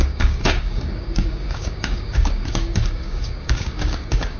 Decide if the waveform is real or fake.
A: fake